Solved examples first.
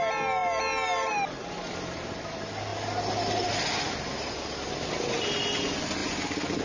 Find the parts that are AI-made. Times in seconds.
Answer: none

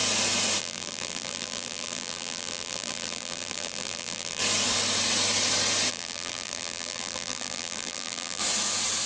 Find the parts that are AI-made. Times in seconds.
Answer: 0.6-4.4 (vocoder, BigVGAN v2); 5.9-8.4

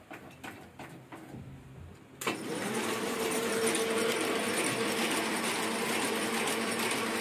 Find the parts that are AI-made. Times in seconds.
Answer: 2.5-3.5 (vocoder, BigVGAN v2)

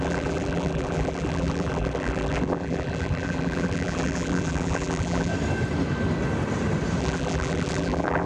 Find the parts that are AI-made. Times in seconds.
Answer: 0.0-5.3 (vocoder, BigVGAN v2); 7.0-8.3

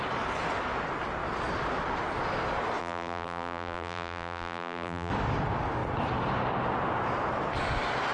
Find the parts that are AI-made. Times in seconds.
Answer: 2.8-5.1 (vocoder, BigVGAN v2)